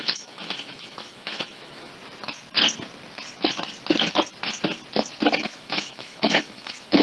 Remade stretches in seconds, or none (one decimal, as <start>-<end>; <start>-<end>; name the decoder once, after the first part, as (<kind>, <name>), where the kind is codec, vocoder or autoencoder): 0.0-1.9 (autoencoder, DAC-VAE); 5.4-7.0